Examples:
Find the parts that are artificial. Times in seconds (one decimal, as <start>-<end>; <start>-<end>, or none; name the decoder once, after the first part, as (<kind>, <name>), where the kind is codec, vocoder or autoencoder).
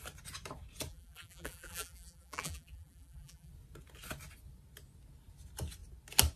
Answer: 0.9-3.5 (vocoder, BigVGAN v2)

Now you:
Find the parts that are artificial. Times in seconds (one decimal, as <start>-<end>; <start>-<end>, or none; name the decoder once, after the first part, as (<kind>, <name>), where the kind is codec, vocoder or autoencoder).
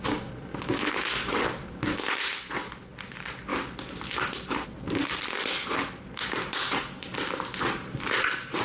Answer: none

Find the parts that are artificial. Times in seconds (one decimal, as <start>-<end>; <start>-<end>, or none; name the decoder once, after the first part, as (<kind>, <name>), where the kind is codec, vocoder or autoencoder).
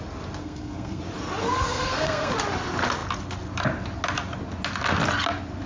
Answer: 0.4-1.0 (codec, SNAC); 1.4-2.3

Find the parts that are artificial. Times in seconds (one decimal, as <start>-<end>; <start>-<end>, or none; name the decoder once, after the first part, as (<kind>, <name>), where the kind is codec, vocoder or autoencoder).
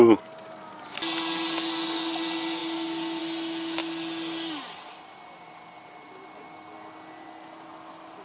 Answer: none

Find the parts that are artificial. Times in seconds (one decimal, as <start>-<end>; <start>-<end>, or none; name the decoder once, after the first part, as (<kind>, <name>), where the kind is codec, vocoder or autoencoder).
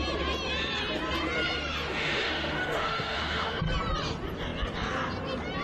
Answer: 1.9-3.6 (autoencoder, DAC-VAE)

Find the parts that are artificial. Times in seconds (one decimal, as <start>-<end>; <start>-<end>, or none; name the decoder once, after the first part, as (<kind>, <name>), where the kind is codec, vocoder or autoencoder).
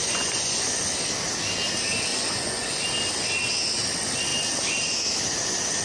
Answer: 0.0-0.8 (vocoder, Vocos); 2.1-2.8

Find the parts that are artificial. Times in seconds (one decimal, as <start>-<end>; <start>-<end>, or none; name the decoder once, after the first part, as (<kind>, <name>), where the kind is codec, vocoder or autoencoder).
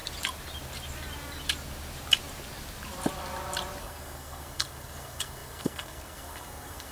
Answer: 3.8-6.9 (codec, SNAC)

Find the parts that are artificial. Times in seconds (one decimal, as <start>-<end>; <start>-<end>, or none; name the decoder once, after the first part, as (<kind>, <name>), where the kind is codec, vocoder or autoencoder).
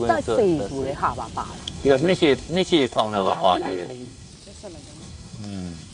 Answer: 1.6-4.3 (codec, SNAC); 5.0-5.9